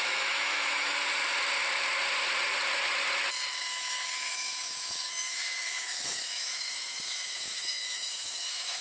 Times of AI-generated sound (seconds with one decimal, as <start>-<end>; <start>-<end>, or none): 0.0-1.0; 3.6-8.8

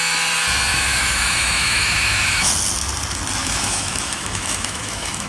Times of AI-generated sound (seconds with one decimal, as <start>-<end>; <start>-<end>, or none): 0.7-2.5; 3.4-5.3

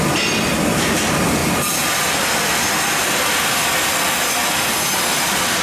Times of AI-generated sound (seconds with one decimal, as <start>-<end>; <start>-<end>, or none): none

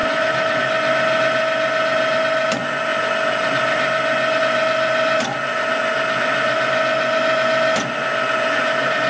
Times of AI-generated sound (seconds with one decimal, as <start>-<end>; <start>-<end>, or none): 0.0-0.6

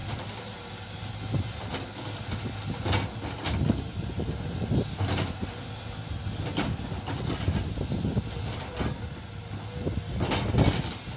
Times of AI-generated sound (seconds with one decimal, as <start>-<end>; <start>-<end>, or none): none

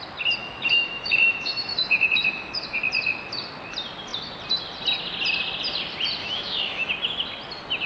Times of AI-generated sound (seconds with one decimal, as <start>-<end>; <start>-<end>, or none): 0.4-2.8; 6.2-6.9

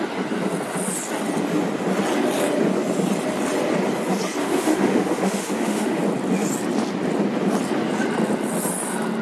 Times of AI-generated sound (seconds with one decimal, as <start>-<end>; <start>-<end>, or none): 4.4-6.0

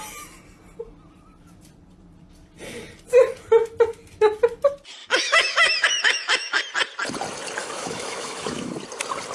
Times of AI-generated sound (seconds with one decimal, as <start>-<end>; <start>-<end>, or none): 5.0-6.6; 7.6-8.7